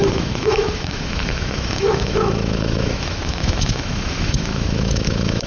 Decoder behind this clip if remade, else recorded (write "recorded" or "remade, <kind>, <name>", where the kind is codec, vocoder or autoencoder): remade, autoencoder, DAC-VAE